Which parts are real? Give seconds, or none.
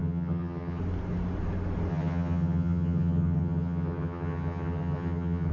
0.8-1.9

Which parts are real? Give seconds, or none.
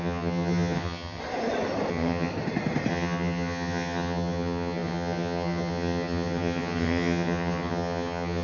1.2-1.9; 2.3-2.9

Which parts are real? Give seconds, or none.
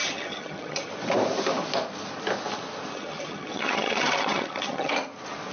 0.9-2.9; 4.9-5.5